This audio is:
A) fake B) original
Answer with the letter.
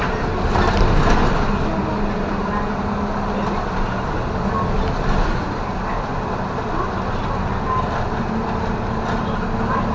B